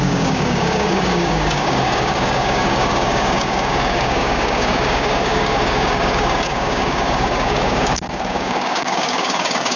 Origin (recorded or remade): remade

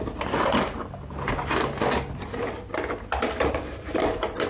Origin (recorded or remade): recorded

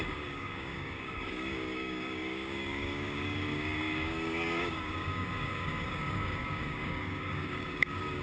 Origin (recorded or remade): remade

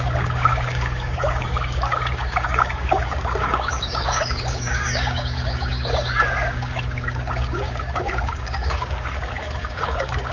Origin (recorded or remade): remade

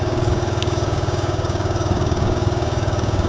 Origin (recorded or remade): remade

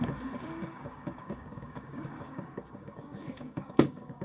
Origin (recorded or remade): remade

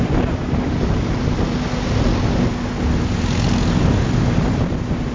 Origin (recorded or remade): recorded